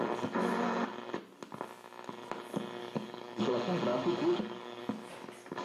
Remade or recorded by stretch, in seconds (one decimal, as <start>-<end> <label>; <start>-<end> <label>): 0.0-2.8 recorded; 2.8-3.5 remade; 3.5-3.9 recorded; 3.9-4.8 remade; 4.8-5.6 recorded